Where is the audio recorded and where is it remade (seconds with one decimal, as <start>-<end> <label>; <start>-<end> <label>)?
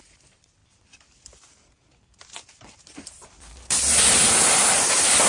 0.0-5.3 recorded